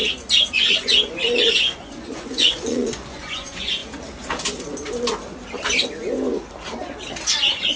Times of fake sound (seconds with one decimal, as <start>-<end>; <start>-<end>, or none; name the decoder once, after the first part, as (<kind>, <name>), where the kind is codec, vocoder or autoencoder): 0.5-3.8 (vocoder, Vocos)